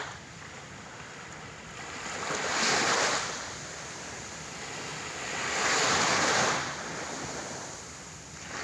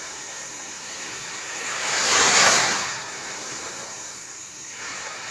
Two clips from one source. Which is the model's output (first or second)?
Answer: second